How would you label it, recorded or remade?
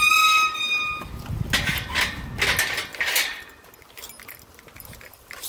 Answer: recorded